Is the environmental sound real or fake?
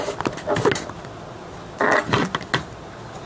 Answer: real